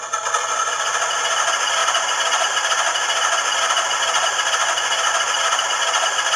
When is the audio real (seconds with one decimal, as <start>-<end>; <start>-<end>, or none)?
0.0-6.4